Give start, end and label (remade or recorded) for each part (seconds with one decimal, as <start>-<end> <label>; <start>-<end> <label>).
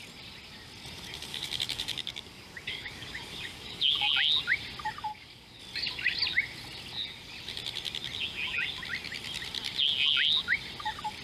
0.0-1.3 recorded; 1.3-4.1 remade; 4.1-5.1 recorded; 5.1-5.6 remade; 5.6-11.2 recorded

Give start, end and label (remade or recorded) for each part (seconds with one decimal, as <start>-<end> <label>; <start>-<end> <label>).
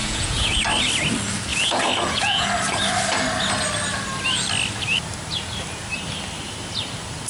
0.0-0.6 remade; 0.6-1.5 recorded; 1.5-2.5 remade; 2.5-7.3 recorded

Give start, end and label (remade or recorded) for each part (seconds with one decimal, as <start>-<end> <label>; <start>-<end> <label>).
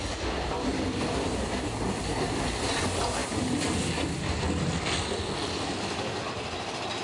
0.0-7.0 recorded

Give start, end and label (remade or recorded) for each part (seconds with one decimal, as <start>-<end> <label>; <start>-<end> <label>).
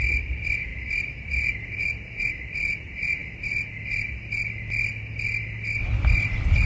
0.0-6.7 recorded